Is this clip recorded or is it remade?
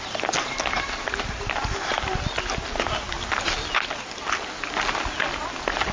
recorded